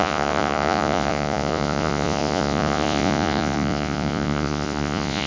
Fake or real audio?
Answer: fake